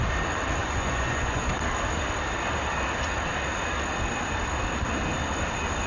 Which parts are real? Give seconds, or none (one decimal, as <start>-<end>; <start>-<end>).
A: 0.0-0.6; 1.5-5.9